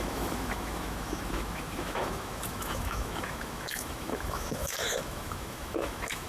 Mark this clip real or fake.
fake